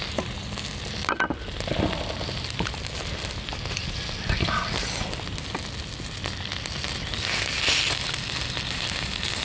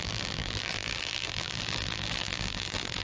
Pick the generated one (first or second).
second